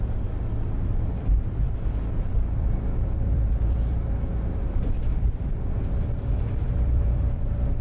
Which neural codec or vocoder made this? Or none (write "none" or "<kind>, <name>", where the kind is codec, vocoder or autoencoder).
vocoder, BigVGAN v2